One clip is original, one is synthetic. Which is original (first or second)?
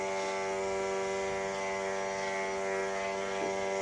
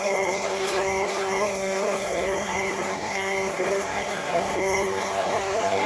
first